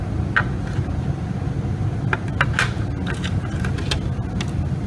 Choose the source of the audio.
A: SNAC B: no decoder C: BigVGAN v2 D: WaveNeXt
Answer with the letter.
B